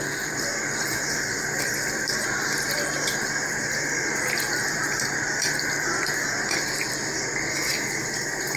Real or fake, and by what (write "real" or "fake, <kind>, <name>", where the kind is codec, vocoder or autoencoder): fake, vocoder, BigVGAN v2